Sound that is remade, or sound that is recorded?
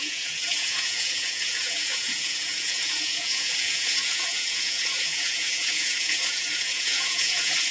remade